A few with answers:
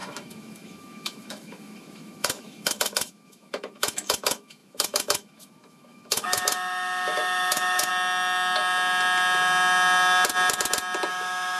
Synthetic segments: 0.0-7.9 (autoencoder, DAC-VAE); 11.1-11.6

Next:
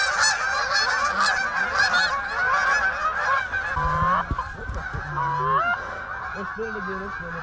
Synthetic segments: none

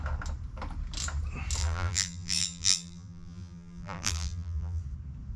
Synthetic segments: 1.6-4.8 (vocoder, BigVGAN v2)

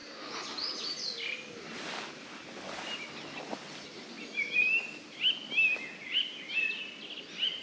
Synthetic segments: none

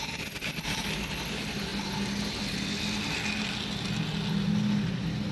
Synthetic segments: 0.0-0.9 (vocoder, BigVGAN v2)